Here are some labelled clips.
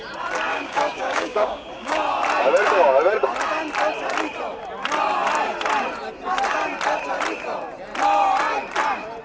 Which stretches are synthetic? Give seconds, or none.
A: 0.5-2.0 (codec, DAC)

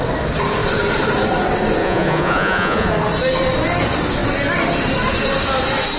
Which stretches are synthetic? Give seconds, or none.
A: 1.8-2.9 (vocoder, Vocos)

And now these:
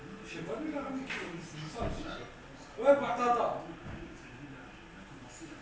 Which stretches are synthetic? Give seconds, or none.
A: 3.8-4.3 (codec, DAC)

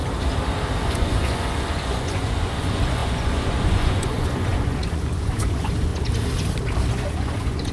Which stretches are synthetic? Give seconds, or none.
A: 0.9-5.9 (vocoder, Vocos); 6.9-7.7

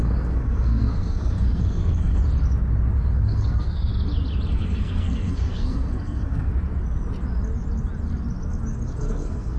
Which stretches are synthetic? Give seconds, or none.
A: 0.0-2.2 (codec, SNAC); 3.1-3.9; 4.5-6.5; 9.0-9.6